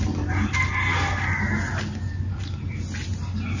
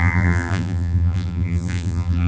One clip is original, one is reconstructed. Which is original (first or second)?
first